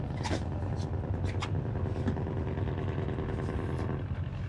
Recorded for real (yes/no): yes